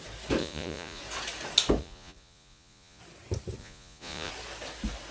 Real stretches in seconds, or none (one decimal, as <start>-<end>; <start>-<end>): 0.0-0.4; 1.0-1.8; 3.0-3.6; 4.3-5.1